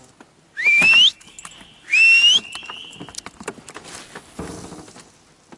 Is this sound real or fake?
real